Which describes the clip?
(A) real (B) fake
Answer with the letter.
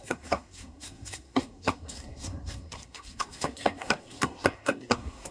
B